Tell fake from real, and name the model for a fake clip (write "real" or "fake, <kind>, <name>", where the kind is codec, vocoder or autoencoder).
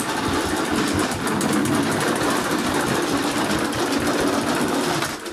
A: real